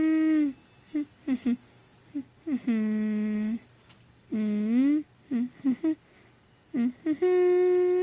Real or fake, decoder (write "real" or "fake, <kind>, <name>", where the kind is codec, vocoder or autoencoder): real